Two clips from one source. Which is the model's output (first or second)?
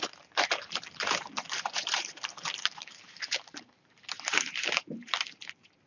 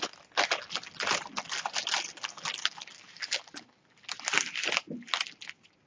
first